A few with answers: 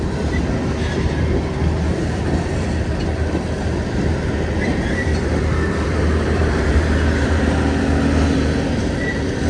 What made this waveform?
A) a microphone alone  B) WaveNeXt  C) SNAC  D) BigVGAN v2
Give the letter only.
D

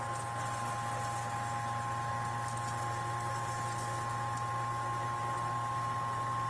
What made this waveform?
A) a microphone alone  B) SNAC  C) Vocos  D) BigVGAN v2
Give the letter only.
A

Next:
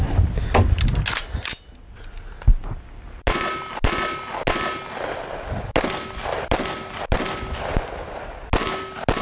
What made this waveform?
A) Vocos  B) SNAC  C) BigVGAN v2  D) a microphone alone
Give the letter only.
D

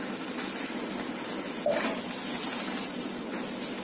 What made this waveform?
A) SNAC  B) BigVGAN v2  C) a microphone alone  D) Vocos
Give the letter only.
C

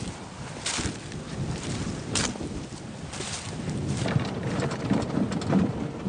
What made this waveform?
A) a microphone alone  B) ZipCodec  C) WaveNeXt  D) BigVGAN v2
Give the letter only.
A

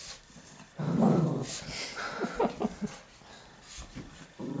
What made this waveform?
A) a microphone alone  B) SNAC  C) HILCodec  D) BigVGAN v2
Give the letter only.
D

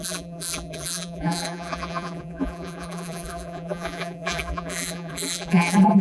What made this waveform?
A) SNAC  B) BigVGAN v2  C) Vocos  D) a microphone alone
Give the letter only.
B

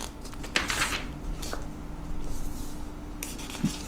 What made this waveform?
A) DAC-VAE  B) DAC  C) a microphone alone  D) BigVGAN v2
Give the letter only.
C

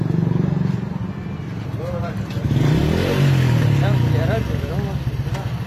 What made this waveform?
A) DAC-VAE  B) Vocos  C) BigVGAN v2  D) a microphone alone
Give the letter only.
D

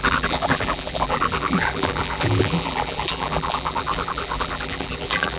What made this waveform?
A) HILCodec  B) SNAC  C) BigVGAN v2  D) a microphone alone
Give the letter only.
C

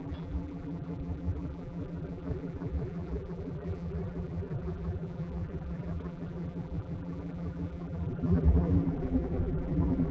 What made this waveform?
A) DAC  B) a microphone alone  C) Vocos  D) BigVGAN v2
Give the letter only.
D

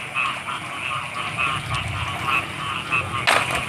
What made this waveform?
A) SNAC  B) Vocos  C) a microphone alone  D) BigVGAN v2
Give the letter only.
C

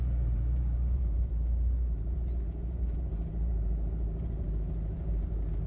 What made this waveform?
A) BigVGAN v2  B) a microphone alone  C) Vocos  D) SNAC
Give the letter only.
A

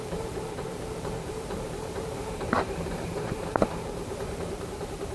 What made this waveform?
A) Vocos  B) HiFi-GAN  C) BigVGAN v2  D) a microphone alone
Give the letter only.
C